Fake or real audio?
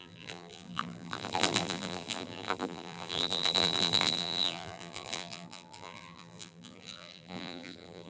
fake